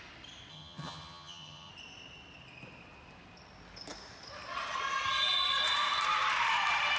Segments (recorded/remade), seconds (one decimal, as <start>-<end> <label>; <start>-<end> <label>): 0.0-0.5 recorded; 0.5-1.7 remade; 1.7-7.0 recorded